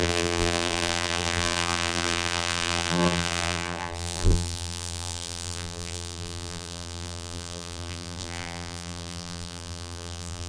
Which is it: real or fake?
fake